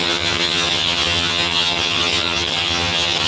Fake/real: fake